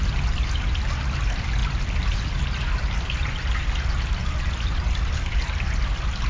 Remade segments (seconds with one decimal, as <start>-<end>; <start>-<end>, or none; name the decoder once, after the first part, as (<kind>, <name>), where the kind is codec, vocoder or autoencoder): none